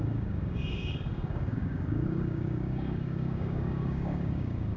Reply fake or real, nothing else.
fake